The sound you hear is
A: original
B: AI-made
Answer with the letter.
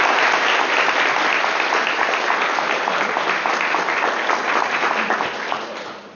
A